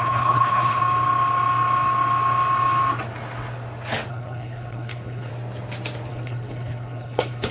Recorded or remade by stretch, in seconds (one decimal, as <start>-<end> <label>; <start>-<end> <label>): 0.0-0.8 remade; 0.8-4.1 recorded; 4.1-5.3 remade; 5.3-6.1 recorded; 6.1-7.5 remade